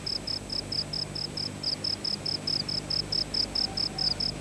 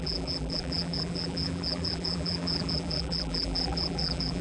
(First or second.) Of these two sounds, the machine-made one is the second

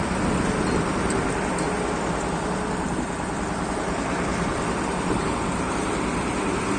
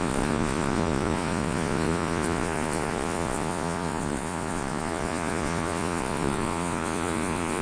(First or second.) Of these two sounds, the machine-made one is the second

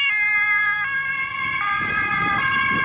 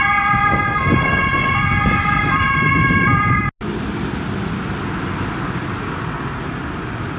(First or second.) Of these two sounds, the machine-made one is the first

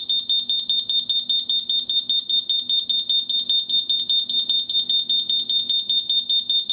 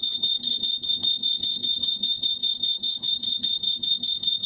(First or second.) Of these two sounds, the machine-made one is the second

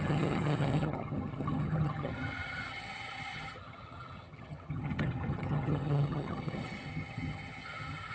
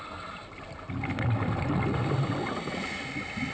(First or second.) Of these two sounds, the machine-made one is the first